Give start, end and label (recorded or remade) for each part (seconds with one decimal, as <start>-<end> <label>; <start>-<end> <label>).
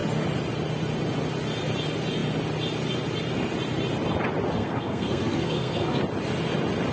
0.0-4.6 recorded; 4.6-6.0 remade; 6.0-6.9 recorded